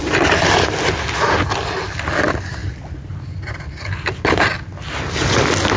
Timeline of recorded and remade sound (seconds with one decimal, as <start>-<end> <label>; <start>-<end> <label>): 0.0-2.6 recorded; 2.6-5.8 remade